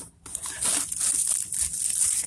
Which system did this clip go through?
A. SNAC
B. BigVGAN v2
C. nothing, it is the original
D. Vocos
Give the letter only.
C